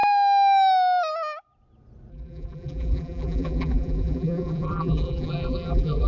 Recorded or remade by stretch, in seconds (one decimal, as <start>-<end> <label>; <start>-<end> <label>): 0.0-2.1 recorded; 2.1-6.1 remade